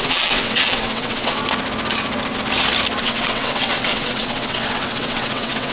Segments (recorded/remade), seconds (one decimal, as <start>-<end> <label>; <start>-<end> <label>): 0.0-1.4 remade; 1.4-3.0 recorded; 3.0-5.7 remade